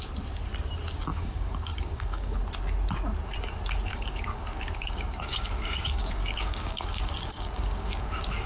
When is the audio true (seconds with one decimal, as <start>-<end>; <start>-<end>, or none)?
0.0-1.1; 2.4-3.9